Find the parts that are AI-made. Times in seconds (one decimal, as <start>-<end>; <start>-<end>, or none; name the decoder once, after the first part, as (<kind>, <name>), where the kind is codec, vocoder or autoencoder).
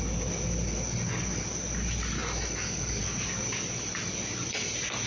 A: none